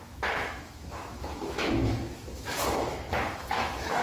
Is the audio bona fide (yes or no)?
no